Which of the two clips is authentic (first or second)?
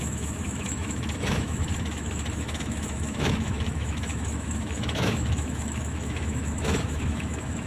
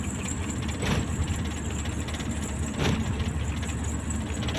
second